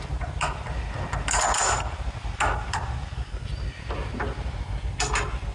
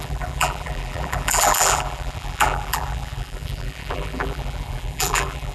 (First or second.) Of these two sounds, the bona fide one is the first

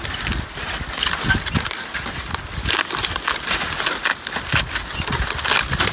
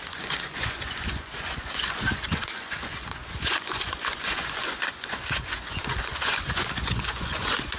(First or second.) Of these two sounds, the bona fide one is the first